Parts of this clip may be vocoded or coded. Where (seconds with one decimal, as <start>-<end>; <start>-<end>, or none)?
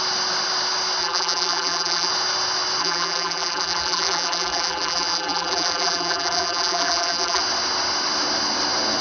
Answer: 1.0-2.1; 2.8-7.4